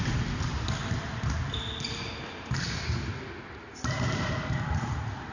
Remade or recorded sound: recorded